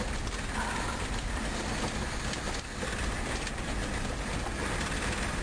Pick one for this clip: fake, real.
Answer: real